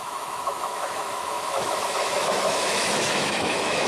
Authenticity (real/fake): fake